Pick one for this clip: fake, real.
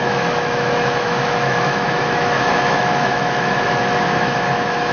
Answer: fake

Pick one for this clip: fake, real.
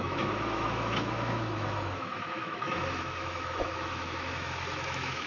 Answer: fake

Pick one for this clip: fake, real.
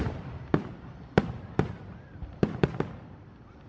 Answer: real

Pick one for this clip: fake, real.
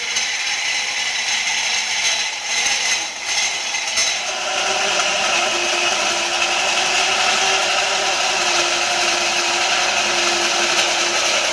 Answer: real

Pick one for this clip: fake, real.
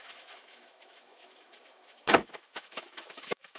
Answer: fake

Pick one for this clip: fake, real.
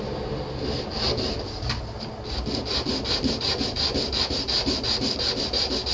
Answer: real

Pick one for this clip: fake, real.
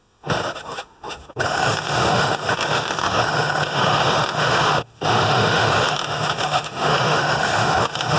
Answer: fake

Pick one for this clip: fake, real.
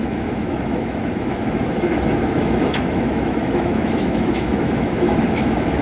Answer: fake